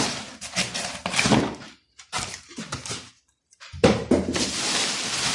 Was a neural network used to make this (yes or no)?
yes